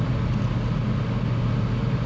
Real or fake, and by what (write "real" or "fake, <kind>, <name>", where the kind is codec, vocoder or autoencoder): real